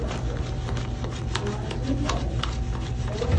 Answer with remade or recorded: recorded